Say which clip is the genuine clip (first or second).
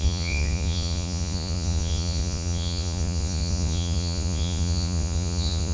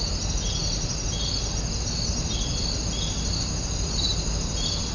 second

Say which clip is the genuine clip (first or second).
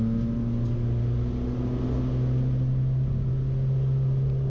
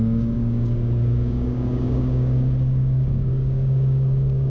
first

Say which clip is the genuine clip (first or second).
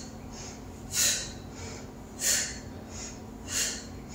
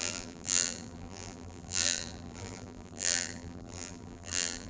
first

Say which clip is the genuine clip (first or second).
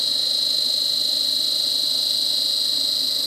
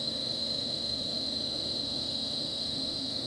first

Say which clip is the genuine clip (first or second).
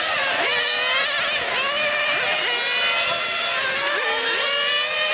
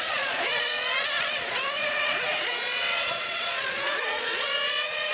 first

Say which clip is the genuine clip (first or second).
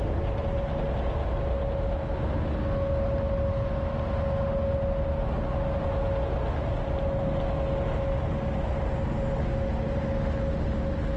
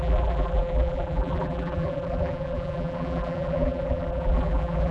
first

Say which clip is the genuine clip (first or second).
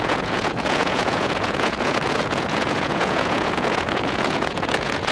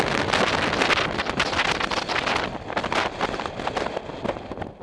second